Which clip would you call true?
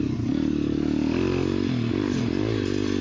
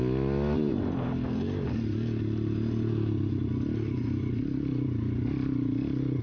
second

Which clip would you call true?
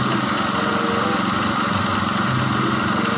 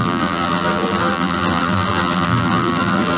first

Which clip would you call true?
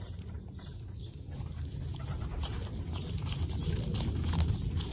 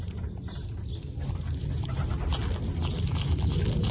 second